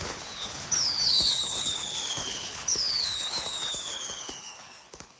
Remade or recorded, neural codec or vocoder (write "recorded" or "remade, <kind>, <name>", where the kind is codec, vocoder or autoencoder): remade, codec, HILCodec